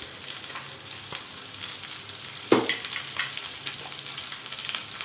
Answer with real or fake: real